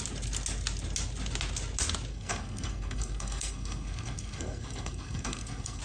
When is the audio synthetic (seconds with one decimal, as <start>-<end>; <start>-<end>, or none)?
2.1-5.8